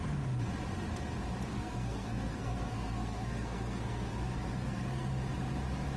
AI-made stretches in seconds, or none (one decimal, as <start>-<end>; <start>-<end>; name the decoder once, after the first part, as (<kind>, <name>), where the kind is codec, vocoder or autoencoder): 1.5-5.1 (codec, SNAC)